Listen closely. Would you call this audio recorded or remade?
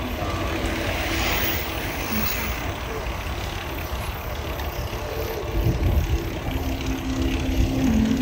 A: recorded